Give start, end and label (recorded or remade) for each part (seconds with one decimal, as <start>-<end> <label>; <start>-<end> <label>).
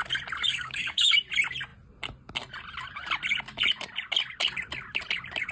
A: 0.0-0.5 recorded; 0.5-1.1 remade; 1.1-5.5 recorded